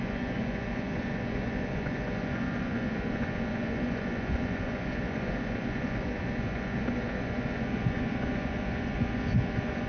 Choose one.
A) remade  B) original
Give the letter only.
A